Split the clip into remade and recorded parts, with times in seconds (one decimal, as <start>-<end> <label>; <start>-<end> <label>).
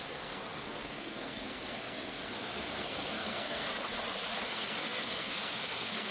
0.0-3.7 remade; 3.7-4.4 recorded; 4.4-6.1 remade